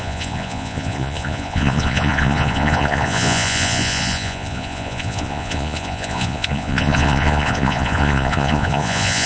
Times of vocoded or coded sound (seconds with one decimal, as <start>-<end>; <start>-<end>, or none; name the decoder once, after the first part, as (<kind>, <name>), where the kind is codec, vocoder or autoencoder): 0.0-9.3 (vocoder, Vocos)